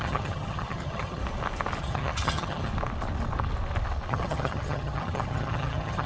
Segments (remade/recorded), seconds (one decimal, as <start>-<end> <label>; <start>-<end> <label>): 0.0-1.2 remade; 1.2-1.8 recorded; 1.8-2.7 remade; 2.7-4.1 recorded; 4.1-6.1 remade